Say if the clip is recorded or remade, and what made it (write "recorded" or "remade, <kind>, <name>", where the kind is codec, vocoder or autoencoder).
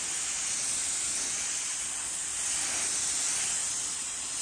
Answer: recorded